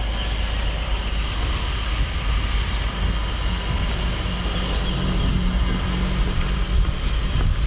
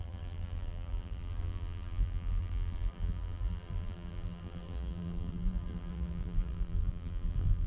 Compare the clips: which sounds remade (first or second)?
second